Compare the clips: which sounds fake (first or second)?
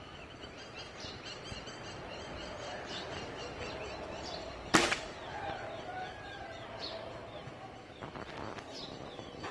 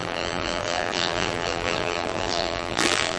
second